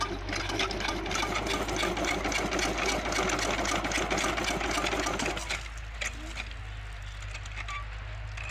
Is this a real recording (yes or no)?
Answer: yes